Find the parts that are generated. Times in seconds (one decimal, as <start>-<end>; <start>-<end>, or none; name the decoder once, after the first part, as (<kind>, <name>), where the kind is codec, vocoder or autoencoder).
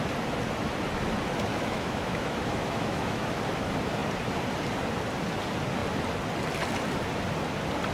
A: 1.5-3.3 (autoencoder, DAC-VAE)